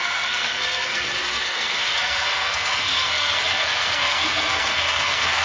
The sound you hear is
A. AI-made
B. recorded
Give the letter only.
A